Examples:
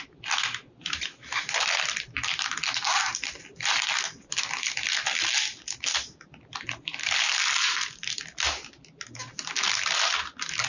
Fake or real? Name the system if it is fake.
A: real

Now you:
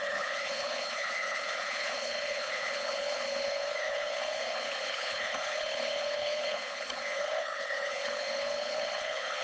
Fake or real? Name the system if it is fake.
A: fake, codec, HILCodec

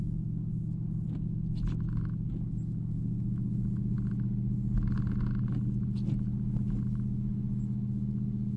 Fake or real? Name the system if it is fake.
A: real